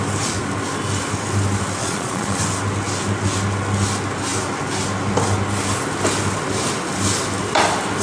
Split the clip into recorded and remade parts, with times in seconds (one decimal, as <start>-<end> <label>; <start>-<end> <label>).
0.0-1.8 recorded; 1.8-2.4 remade; 2.4-8.0 recorded